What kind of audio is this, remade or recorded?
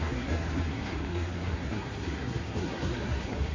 remade